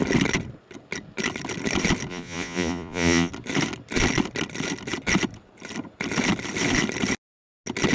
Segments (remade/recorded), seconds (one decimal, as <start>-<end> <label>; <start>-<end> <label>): 0.0-2.1 recorded; 2.1-3.3 remade; 3.3-7.9 recorded